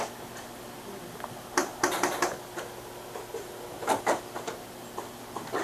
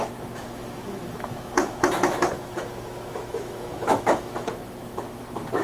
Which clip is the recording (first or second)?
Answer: first